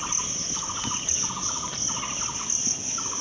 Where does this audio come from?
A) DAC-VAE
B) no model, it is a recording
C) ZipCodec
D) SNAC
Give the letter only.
B